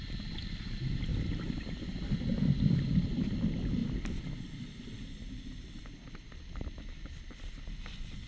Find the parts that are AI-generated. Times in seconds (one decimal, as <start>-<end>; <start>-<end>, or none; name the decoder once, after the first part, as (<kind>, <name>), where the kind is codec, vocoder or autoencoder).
none